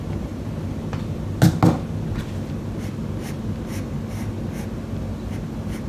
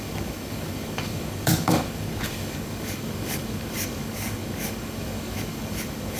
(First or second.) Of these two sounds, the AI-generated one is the second